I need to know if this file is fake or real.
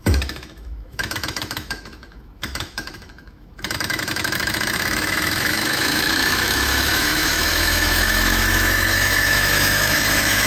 fake